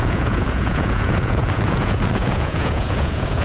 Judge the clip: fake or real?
fake